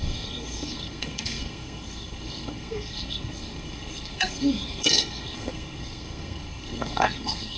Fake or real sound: fake